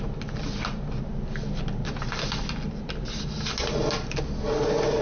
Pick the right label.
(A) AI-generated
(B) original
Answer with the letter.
B